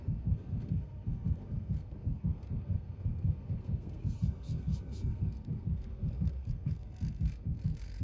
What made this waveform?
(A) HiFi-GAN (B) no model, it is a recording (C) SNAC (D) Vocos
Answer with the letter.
C